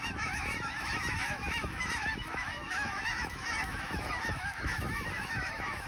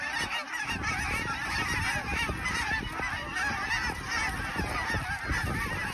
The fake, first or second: first